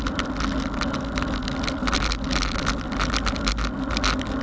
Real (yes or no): yes